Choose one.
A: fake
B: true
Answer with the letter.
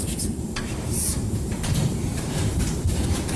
A